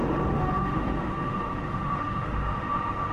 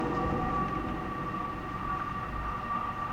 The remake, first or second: first